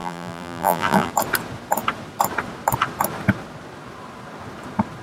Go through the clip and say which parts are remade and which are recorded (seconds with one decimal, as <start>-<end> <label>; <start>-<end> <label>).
0.0-1.1 remade; 1.1-5.0 recorded